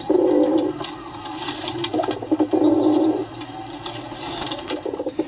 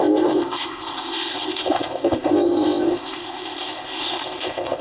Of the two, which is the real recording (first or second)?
first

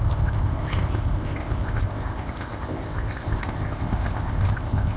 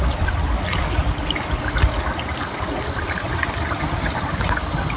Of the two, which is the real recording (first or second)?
second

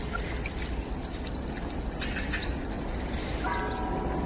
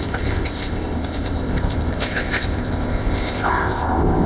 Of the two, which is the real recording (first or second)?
first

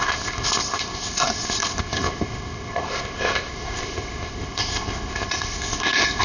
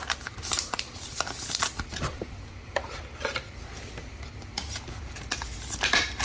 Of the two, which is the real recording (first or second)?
second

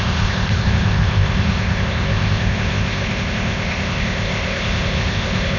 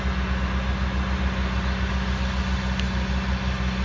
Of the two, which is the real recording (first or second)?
second